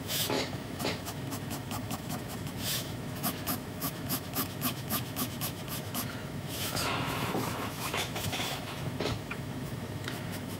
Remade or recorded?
remade